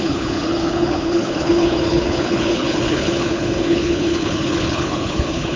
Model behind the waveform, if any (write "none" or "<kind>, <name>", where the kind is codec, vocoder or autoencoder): codec, HILCodec